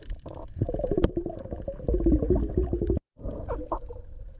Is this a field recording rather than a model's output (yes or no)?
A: no